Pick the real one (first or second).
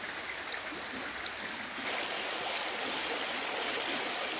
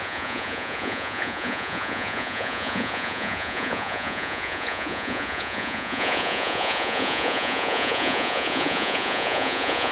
first